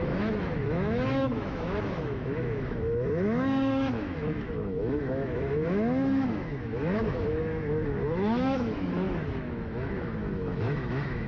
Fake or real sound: fake